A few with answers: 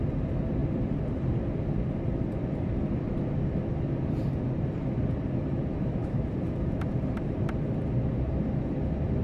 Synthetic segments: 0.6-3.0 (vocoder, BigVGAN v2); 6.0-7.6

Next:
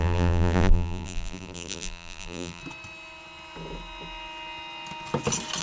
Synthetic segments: 0.0-2.6 (vocoder, BigVGAN v2)

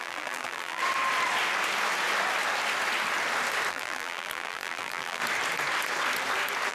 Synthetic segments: 0.0-0.8 (vocoder, BigVGAN v2); 3.7-5.2

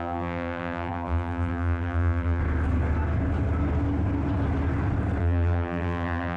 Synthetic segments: 0.0-2.4 (vocoder, BigVGAN v2); 5.2-6.4

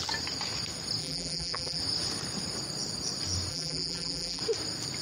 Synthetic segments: 1.0-1.8 (vocoder, BigVGAN v2); 3.5-4.4

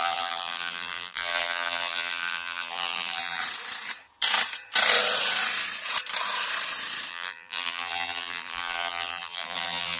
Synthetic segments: 0.0-3.4 (vocoder, BigVGAN v2); 7.1-10.0